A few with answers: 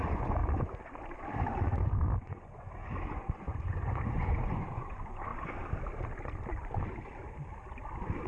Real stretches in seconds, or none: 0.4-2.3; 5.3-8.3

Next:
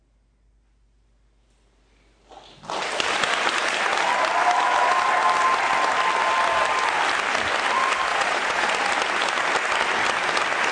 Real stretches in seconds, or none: 0.0-8.1; 8.7-10.7

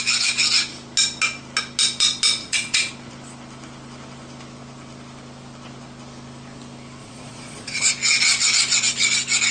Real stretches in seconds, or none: 0.0-2.4; 2.9-7.0; 7.9-9.5

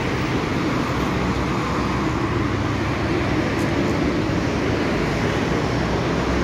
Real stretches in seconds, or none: 0.0-6.4

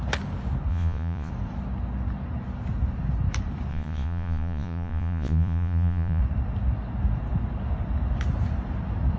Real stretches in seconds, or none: 0.0-0.7; 1.3-3.7; 6.2-9.2

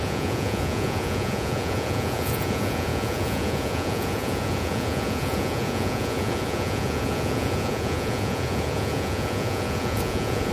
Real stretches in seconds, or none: none